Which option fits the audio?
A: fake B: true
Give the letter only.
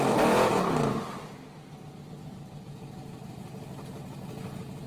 B